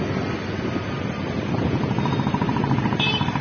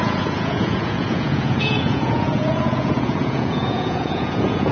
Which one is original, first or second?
first